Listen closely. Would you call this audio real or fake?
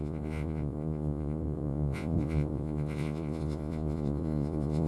fake